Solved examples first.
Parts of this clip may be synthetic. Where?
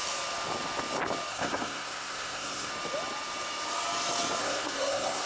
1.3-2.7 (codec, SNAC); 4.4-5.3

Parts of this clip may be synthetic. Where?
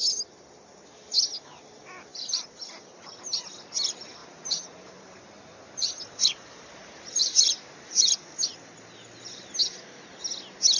2.1-3.1 (vocoder, BigVGAN v2); 4.2-8.3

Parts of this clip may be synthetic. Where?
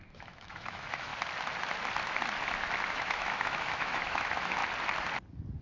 0.0-1.1 (autoencoder, DAC-VAE); 2.9-4.6